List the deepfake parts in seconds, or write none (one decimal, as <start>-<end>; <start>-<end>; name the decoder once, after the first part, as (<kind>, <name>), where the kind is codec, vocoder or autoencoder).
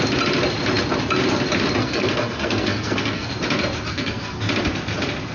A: 1.8-3.3 (codec, SNAC); 3.9-4.4